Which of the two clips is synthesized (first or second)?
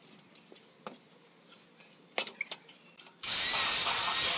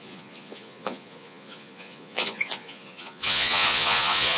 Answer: second